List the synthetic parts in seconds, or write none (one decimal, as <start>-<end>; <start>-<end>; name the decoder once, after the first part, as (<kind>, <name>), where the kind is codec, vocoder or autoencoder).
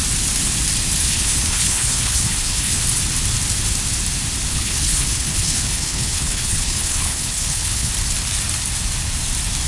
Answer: 1.0-2.8 (codec, HILCodec); 4.5-7.9